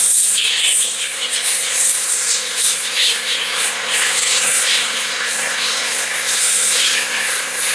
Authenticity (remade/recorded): remade